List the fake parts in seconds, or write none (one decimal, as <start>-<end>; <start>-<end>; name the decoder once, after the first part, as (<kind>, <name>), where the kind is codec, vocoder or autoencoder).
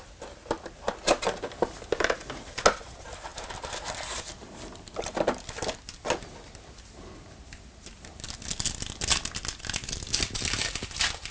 none